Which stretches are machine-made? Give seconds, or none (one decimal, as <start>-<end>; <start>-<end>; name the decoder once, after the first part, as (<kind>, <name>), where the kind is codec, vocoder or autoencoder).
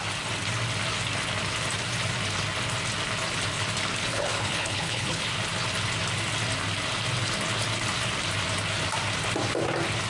4.1-5.2 (codec, HILCodec)